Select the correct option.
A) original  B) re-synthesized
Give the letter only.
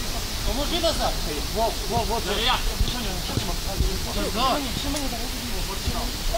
A